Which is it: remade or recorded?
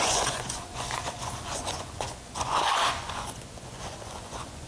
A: remade